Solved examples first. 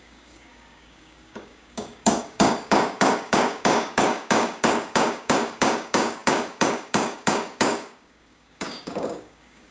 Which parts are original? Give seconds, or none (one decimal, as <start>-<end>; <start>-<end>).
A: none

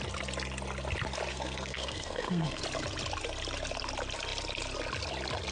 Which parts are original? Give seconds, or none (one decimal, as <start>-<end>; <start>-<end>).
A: 0.0-1.3; 2.6-5.5

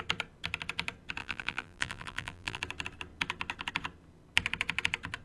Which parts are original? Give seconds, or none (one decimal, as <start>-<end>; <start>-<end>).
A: 0.0-1.2; 2.6-5.2